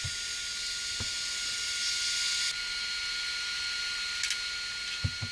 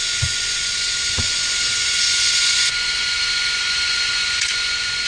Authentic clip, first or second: first